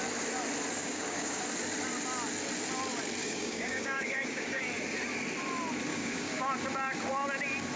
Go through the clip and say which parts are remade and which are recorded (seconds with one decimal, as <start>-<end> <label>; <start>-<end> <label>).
0.0-0.8 recorded; 0.8-1.4 remade; 1.4-3.2 recorded; 3.2-4.6 remade; 4.6-5.9 recorded; 5.9-6.5 remade; 6.5-7.8 recorded